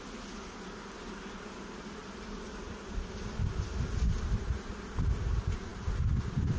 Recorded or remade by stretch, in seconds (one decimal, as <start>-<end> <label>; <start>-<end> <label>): 0.0-2.0 recorded; 2.0-2.9 remade; 2.9-5.7 recorded; 5.7-6.6 remade